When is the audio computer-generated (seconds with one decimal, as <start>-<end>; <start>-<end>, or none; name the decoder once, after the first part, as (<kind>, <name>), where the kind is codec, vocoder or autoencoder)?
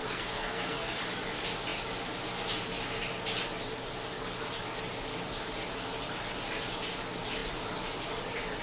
0.0-1.0 (codec, SNAC)